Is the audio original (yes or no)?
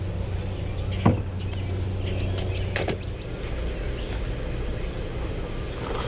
yes